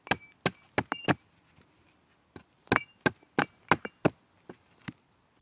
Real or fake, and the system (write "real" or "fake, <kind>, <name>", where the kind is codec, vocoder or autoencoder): real